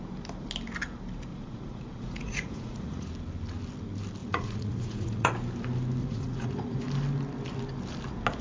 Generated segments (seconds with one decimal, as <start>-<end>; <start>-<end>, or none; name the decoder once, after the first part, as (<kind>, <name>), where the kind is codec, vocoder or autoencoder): 1.3-3.1 (vocoder, Vocos); 4.2-5.3; 6.0-6.8